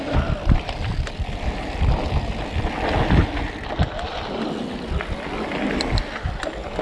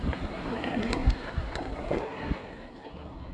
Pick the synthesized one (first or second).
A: second